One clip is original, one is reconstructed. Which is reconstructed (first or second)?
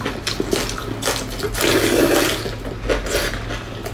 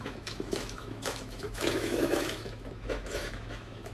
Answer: second